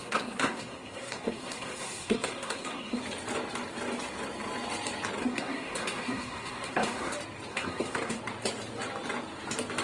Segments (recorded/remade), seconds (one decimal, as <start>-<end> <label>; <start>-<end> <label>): 0.0-3.0 remade; 3.0-5.2 recorded; 5.2-7.1 remade; 7.1-7.5 recorded; 7.5-8.2 remade; 8.2-9.8 recorded